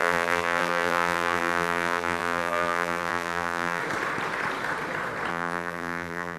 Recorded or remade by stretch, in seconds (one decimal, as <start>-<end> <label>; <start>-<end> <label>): 0.0-3.8 remade; 3.8-5.3 recorded; 5.3-6.4 remade